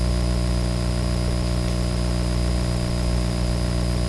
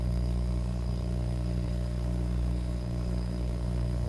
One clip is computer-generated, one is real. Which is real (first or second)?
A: first